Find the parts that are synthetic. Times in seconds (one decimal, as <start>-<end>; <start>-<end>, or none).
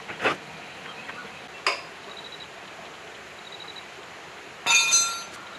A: none